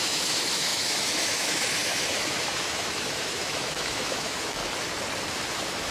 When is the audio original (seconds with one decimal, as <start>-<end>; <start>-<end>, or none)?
4.6-5.3